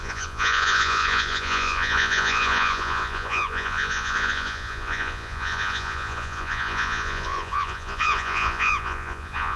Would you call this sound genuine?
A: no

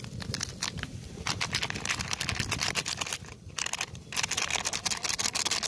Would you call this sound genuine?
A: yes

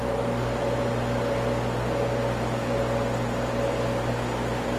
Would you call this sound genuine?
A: yes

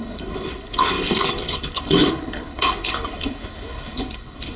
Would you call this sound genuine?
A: no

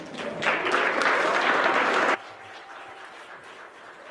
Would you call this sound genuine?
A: yes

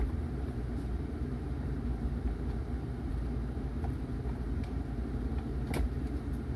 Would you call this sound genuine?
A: no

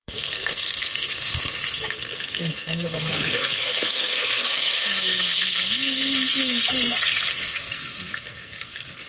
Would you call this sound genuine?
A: no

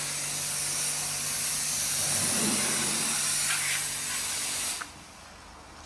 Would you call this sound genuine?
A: yes